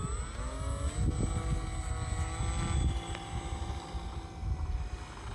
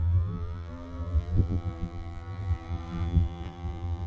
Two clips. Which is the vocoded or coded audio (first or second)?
second